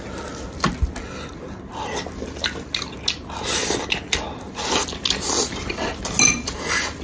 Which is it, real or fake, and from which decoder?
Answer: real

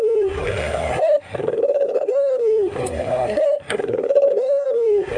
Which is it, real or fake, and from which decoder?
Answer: fake, codec, SNAC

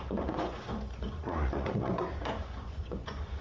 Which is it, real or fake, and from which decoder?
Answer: fake, vocoder, Vocos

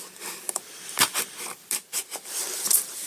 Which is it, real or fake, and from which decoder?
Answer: real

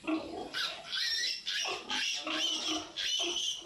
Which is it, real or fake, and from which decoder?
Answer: real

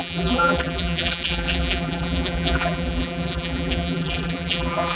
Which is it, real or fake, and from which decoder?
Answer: fake, vocoder, BigVGAN v2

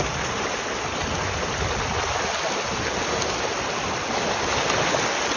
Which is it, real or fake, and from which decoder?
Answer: real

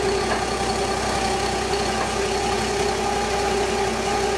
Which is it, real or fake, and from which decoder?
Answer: fake, vocoder, Vocos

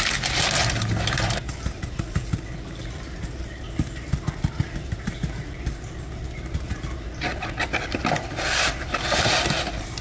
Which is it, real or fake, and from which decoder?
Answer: real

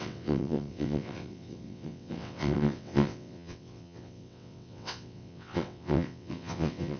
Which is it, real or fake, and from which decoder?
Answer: fake, vocoder, WaveNeXt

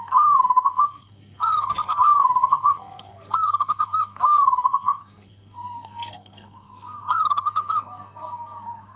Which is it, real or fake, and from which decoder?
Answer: fake, codec, SNAC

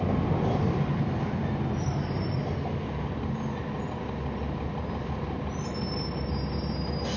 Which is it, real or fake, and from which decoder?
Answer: real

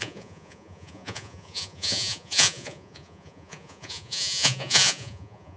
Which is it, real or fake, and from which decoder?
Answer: fake, vocoder, Vocos